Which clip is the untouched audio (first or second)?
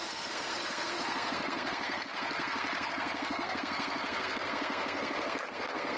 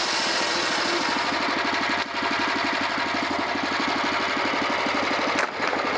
second